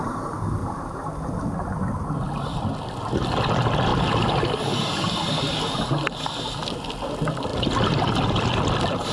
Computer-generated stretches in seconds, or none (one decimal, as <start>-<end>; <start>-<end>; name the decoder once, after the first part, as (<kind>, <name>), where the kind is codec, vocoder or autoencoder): 0.6-3.4 (vocoder, BigVGAN v2); 3.9-5.3